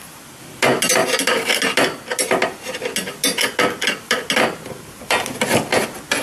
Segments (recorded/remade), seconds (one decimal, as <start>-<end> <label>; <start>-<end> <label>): 0.0-6.2 recorded